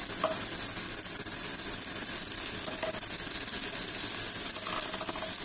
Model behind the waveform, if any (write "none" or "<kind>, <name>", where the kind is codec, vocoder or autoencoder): none